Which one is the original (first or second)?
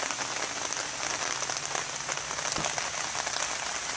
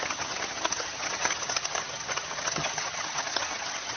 first